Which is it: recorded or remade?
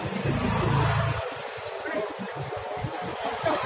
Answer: recorded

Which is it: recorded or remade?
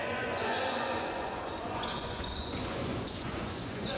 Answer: remade